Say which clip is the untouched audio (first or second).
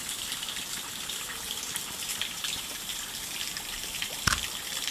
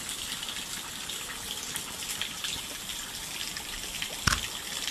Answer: second